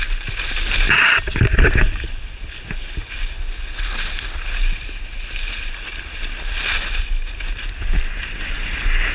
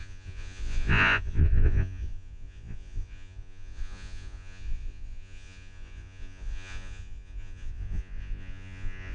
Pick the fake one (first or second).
second